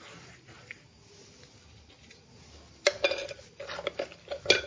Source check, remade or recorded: recorded